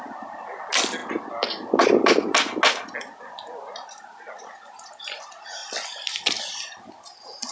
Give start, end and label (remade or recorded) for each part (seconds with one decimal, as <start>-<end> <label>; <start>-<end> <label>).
0.0-7.5 recorded